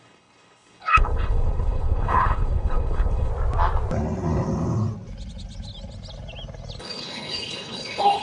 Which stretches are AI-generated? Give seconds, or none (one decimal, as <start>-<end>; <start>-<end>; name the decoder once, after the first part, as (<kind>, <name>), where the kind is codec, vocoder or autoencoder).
0.0-3.3 (codec, HILCodec); 6.8-8.2